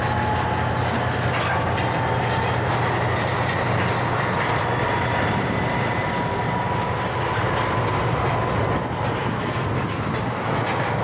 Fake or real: real